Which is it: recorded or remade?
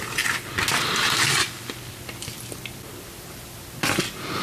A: recorded